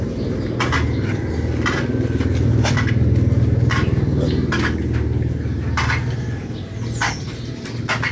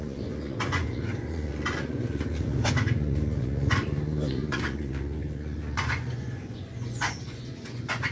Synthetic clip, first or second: second